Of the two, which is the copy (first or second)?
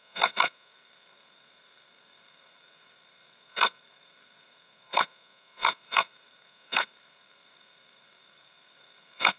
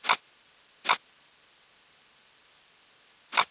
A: first